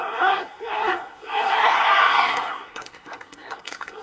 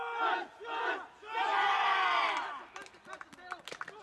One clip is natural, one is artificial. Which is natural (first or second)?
second